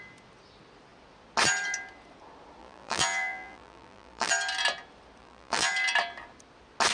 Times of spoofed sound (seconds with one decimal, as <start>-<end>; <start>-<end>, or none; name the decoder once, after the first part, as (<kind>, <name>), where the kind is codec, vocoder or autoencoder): 2.6-4.3 (vocoder, BigVGAN v2); 5.2-5.7